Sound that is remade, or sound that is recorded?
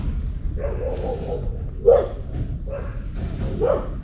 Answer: recorded